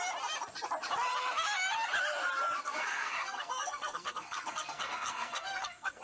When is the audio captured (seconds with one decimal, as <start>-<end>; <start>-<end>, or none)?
0.0-2.6